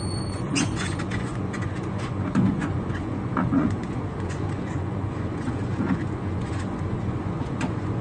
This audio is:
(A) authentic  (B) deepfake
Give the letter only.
B